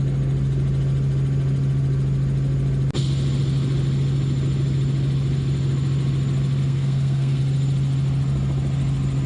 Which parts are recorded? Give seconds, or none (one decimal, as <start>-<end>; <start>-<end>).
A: 0.0-6.6; 7.4-9.3